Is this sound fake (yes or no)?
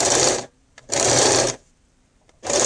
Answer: yes